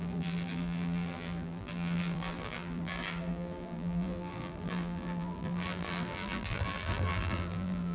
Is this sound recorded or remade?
remade